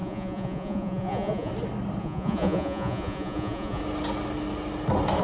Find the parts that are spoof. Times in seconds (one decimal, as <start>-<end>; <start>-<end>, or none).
0.0-1.5; 2.0-3.8